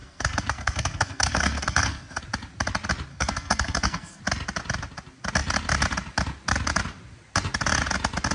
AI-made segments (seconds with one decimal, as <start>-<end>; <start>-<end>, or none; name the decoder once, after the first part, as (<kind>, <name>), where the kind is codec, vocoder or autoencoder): 0.0-2.2 (codec, SNAC); 3.1-4.2